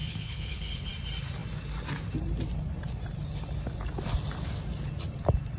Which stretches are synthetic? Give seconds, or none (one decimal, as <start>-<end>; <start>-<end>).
0.0-0.9